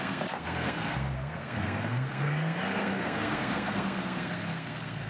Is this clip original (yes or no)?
no